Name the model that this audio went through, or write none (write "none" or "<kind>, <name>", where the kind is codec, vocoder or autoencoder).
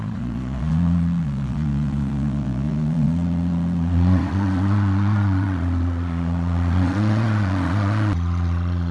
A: vocoder, Vocos